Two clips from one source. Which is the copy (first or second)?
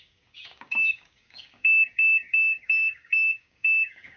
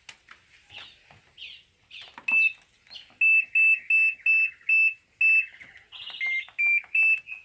first